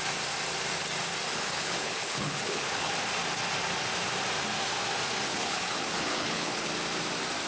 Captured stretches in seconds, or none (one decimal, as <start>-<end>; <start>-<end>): 0.0-1.3; 2.9-5.3; 6.7-7.5